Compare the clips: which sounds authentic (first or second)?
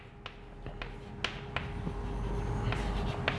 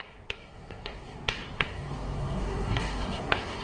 first